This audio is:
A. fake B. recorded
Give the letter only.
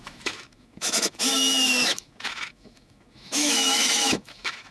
A